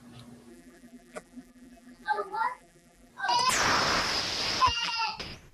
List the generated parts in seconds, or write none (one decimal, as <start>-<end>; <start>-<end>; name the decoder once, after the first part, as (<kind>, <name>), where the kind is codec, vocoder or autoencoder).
0.5-3.1 (vocoder, BigVGAN v2); 4.6-5.1